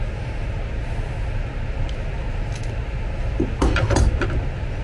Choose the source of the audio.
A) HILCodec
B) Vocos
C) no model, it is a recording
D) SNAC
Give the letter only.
C